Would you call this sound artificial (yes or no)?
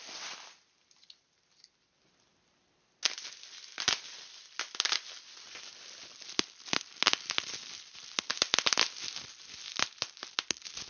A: no